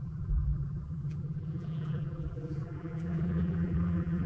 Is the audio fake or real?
fake